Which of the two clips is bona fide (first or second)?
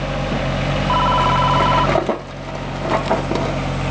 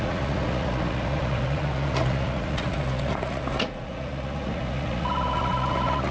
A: first